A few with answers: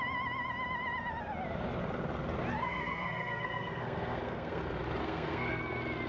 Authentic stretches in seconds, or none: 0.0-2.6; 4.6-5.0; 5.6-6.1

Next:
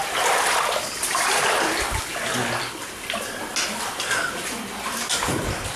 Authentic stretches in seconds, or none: 0.0-5.8

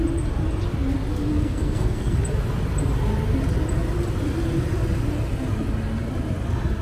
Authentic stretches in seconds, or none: 0.0-1.1; 2.2-6.8